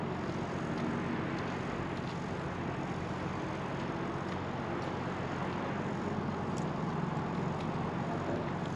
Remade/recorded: recorded